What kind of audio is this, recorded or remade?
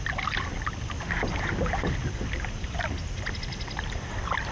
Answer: recorded